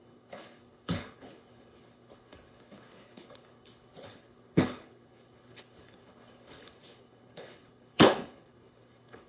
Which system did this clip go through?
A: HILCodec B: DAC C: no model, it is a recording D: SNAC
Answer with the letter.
A